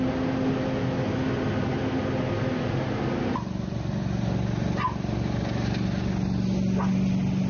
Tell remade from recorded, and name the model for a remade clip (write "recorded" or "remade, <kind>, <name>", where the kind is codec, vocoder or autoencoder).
recorded